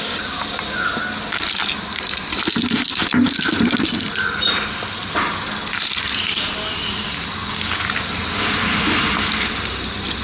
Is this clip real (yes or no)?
yes